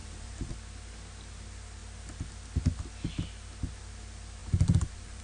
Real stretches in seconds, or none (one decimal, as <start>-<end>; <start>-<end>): 0.5-4.4